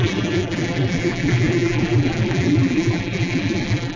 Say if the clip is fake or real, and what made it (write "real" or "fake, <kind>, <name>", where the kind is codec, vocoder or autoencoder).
fake, vocoder, BigVGAN v2